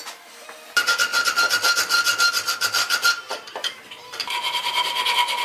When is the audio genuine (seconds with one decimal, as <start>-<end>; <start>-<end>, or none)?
0.0-5.4